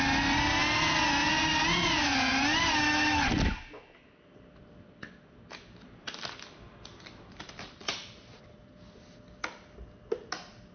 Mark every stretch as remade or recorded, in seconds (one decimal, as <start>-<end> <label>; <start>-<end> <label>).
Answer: 0.0-10.7 recorded